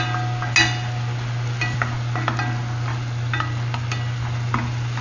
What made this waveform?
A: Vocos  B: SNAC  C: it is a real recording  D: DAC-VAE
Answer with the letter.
C